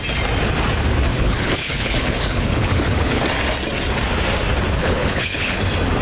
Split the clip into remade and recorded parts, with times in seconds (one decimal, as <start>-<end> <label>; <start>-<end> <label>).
0.0-1.1 recorded; 1.1-3.2 remade; 3.2-4.8 recorded; 4.8-5.6 remade; 5.6-6.0 recorded